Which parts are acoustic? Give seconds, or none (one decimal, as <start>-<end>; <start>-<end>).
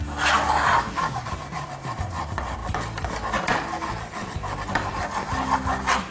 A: 0.0-6.1